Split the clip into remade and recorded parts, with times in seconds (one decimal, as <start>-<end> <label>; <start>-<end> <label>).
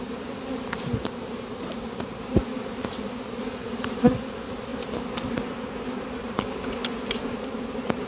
0.0-4.7 remade; 4.7-5.3 recorded; 5.3-8.1 remade